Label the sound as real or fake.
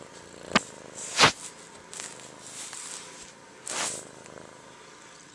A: real